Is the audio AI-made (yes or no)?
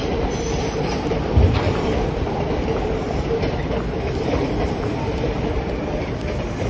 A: yes